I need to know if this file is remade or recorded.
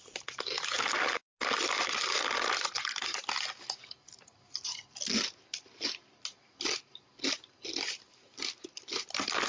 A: recorded